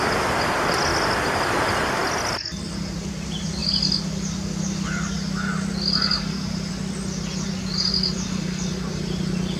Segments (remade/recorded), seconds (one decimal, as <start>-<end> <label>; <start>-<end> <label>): 0.0-9.6 recorded